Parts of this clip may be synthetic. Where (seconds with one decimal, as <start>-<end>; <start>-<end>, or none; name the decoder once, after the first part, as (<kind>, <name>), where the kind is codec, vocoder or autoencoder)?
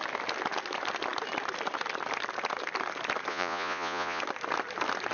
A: 3.3-4.2 (vocoder, Vocos)